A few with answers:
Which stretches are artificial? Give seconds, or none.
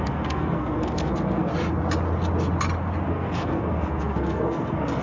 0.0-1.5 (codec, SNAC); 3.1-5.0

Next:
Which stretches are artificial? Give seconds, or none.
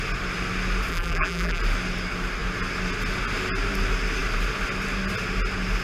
0.9-1.6 (vocoder, BigVGAN v2)